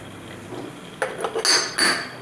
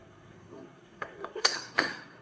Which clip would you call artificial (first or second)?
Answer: second